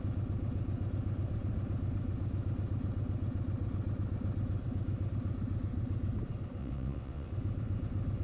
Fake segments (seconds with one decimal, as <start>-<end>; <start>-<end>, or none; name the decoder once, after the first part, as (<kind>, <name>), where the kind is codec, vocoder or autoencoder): 6.6-7.3 (vocoder, WaveNeXt)